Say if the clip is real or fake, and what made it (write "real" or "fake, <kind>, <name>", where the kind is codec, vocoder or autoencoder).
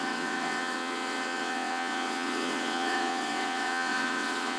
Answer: fake, vocoder, WaveNeXt